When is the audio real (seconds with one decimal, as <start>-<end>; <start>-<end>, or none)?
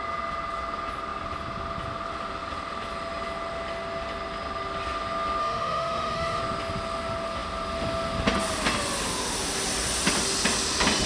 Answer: 0.0-5.4; 6.4-11.1